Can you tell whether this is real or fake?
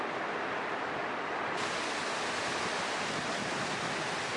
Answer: real